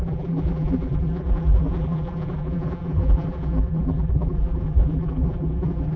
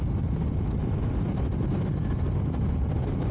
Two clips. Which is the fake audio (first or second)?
first